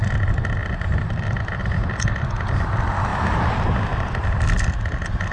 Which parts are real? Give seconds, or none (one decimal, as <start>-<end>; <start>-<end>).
0.0-0.6; 2.1-5.3